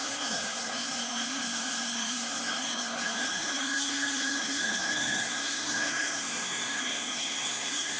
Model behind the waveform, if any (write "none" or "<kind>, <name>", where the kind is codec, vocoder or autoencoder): codec, SNAC